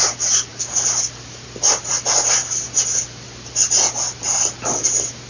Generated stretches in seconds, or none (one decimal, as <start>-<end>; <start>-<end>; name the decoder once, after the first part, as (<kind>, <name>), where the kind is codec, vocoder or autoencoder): none